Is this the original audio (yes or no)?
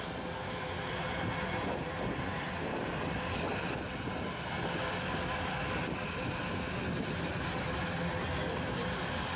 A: yes